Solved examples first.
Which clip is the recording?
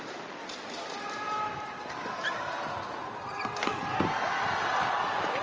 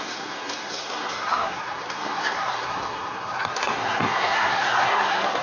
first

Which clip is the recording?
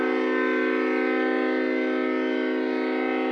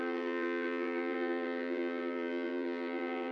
first